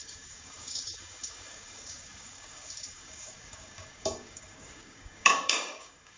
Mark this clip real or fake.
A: fake